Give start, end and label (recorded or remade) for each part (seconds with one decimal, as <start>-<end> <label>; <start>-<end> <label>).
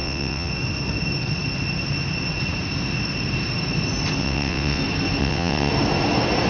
0.0-0.5 remade; 0.5-4.2 recorded; 4.2-4.8 remade; 4.8-5.2 recorded; 5.2-5.7 remade; 5.7-6.5 recorded